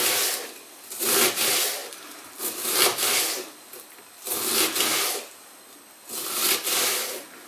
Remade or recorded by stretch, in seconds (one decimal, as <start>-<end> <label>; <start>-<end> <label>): 0.0-1.8 remade; 1.8-2.4 recorded; 2.4-2.9 remade; 2.9-6.5 recorded; 6.5-7.5 remade